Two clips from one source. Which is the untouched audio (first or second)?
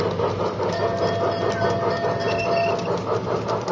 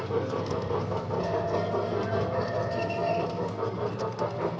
first